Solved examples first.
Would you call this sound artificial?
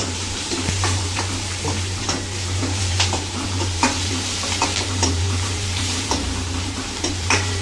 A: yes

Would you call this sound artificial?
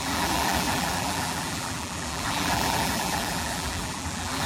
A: yes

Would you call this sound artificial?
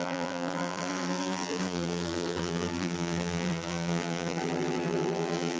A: yes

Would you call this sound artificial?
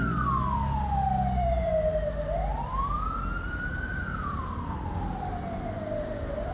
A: no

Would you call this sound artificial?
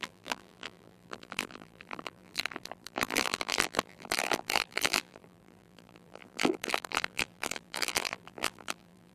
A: yes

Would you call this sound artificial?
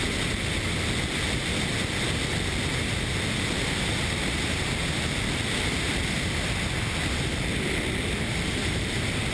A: no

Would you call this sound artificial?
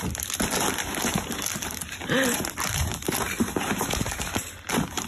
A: yes